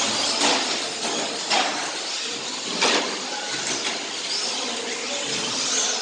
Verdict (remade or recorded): recorded